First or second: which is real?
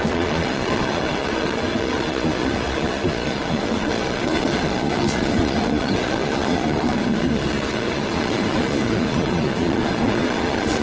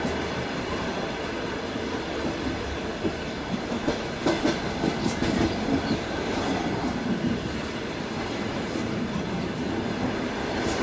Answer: second